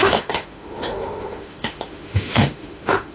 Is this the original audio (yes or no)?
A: no